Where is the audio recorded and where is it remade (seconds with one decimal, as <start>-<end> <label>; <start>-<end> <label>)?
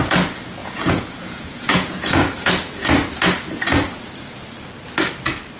0.0-0.6 recorded; 0.6-2.5 remade; 2.5-5.6 recorded